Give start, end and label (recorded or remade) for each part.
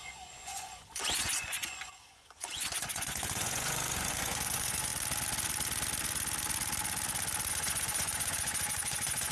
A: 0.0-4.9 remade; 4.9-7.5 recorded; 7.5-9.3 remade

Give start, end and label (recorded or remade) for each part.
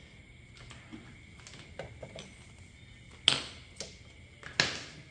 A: 0.0-5.1 recorded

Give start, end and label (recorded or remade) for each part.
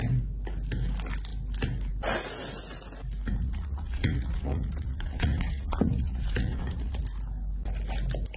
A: 0.0-3.4 recorded; 3.4-7.0 remade; 7.0-8.4 recorded